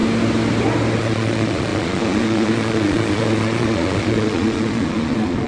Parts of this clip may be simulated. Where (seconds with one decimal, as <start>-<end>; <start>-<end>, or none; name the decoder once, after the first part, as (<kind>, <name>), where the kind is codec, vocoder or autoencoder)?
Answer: 1.0-5.5 (vocoder, Vocos)